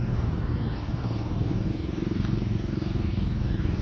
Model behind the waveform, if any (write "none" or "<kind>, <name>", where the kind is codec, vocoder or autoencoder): codec, DAC